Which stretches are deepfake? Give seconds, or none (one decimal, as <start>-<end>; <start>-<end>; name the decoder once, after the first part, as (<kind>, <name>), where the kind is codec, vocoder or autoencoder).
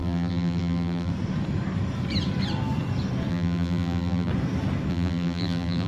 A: 0.0-1.1 (vocoder, BigVGAN v2); 3.3-4.3; 4.9-5.9